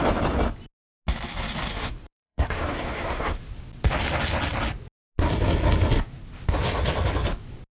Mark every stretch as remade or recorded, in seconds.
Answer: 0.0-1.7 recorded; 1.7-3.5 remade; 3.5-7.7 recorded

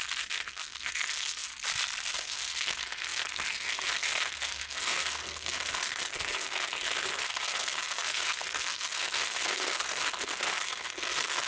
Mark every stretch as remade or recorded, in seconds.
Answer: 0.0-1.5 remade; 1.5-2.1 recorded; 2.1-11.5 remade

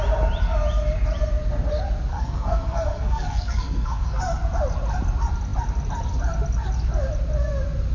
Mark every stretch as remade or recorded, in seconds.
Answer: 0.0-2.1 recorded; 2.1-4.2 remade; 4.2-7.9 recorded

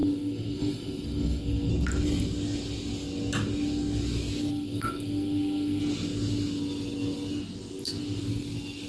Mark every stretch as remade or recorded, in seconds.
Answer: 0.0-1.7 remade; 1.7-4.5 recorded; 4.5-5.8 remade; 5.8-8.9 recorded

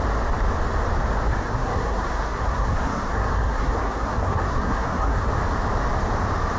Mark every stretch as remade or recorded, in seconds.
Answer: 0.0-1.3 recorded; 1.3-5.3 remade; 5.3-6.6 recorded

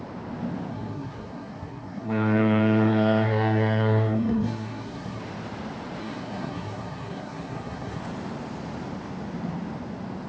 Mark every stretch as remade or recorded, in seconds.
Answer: 0.0-0.7 recorded; 0.7-5.2 remade; 5.2-6.0 recorded; 6.0-8.0 remade; 8.0-10.3 recorded

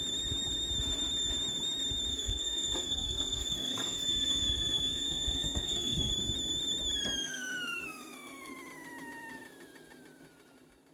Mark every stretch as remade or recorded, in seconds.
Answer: 0.0-2.1 recorded; 2.1-6.1 remade; 6.1-7.2 recorded; 7.2-8.5 remade; 8.5-10.9 recorded

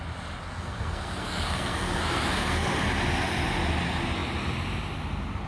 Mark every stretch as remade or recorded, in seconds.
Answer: 0.0-0.4 recorded; 0.4-2.7 remade; 2.7-5.5 recorded